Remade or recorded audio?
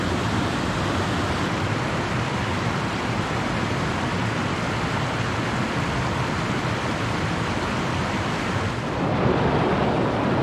recorded